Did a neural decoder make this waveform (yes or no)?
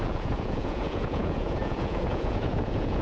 yes